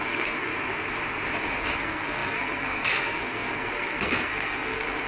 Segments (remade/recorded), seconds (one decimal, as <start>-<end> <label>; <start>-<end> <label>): 0.0-0.5 remade; 0.5-1.6 recorded; 1.6-5.1 remade